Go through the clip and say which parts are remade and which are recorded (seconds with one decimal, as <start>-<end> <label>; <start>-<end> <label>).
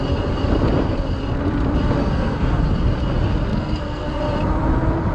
0.0-2.0 recorded; 2.0-2.6 remade; 2.6-3.5 recorded; 3.5-4.2 remade; 4.2-5.1 recorded